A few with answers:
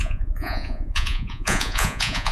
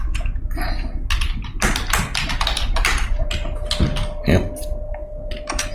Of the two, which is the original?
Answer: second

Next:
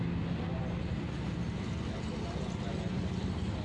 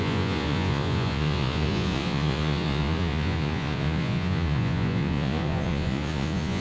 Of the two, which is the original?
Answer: first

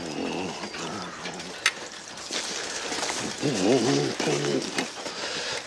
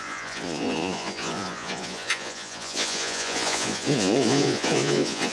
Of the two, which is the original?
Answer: first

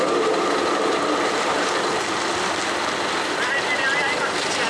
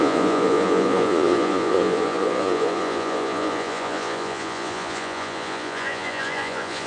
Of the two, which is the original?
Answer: first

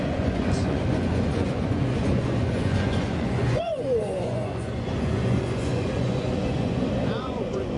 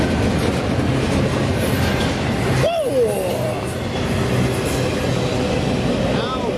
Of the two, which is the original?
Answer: second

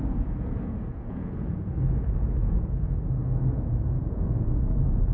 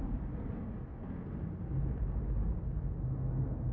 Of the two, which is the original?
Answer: second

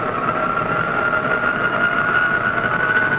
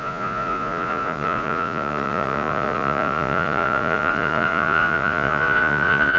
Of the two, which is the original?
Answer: first